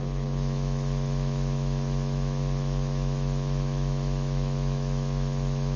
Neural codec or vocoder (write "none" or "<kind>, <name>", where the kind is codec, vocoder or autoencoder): autoencoder, DAC-VAE